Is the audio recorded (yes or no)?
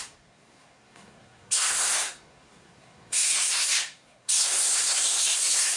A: no